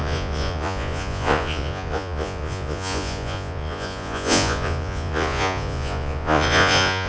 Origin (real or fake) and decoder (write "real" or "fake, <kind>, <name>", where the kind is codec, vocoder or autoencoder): fake, vocoder, Vocos